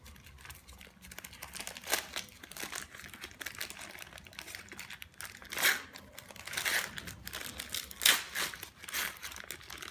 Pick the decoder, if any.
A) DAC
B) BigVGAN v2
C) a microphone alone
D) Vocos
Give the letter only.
C